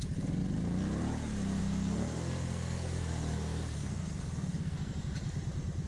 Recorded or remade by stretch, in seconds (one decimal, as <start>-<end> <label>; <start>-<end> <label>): 0.0-1.6 recorded; 1.6-5.1 remade; 5.1-5.9 recorded